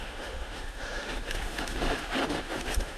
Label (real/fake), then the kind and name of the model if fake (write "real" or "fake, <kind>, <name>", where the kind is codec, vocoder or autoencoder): fake, autoencoder, DAC-VAE